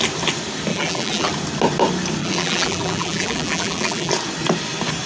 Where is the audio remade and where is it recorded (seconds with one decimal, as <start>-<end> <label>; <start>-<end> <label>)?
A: 0.0-0.7 recorded; 0.7-1.3 remade; 1.3-2.2 recorded; 2.2-4.1 remade; 4.1-5.1 recorded